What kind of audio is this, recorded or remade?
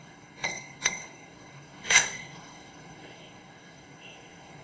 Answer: remade